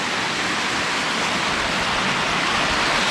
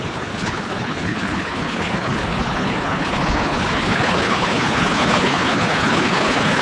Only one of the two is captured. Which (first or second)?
first